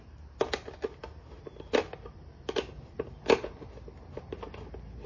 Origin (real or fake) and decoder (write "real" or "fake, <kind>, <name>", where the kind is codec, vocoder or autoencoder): real